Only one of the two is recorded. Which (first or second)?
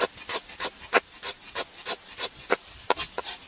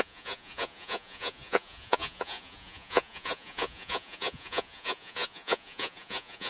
first